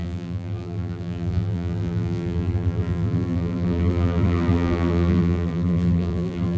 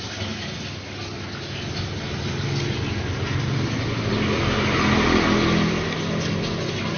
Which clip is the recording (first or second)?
second